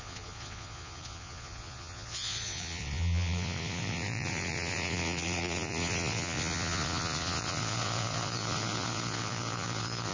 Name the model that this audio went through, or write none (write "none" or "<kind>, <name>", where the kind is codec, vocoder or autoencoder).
vocoder, Vocos